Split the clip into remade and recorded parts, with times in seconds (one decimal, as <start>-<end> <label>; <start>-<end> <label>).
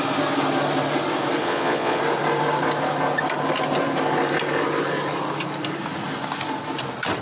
0.0-1.4 recorded; 1.4-2.0 remade; 2.0-7.2 recorded